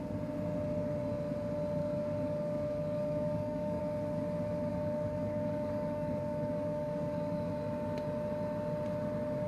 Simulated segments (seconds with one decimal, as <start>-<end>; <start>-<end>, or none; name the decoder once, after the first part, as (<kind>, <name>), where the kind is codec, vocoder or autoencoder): 1.8-3.8 (codec, DAC); 4.7-7.5